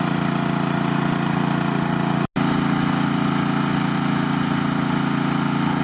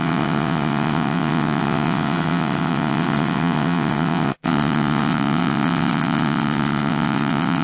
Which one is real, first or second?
first